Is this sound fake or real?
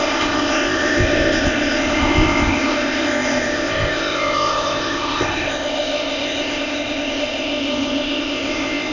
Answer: fake